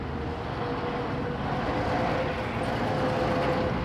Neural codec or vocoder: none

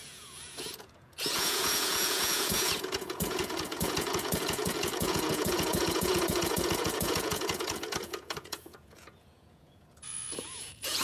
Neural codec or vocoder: vocoder, Vocos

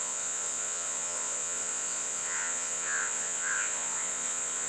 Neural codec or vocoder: vocoder, Vocos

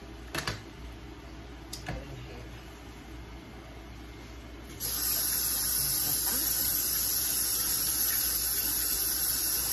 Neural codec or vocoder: none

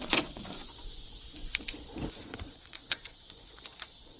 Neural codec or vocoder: vocoder, Vocos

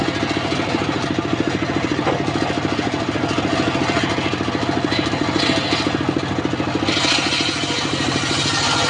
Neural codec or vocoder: none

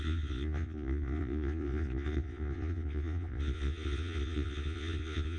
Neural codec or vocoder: vocoder, Vocos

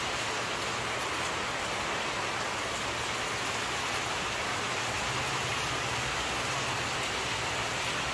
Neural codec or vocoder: none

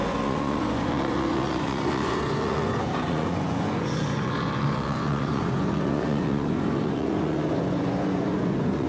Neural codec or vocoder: vocoder, Vocos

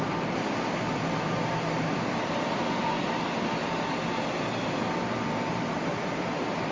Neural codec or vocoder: none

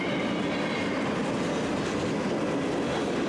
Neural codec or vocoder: none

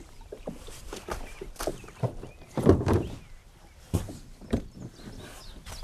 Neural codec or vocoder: none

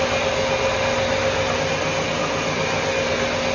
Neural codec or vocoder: none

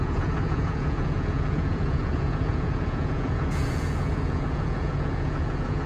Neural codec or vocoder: vocoder, Vocos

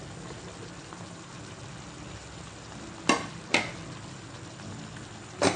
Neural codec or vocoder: none